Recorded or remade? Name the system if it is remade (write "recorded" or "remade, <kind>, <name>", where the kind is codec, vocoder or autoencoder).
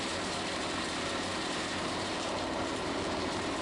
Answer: remade, vocoder, BigVGAN v2